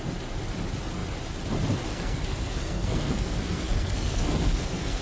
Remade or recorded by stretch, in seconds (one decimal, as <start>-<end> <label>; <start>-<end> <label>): 0.0-1.9 recorded; 1.9-5.0 remade